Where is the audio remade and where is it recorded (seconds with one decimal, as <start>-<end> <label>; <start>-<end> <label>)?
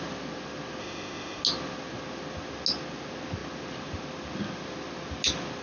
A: 0.0-0.8 recorded; 0.8-1.4 remade; 1.4-5.6 recorded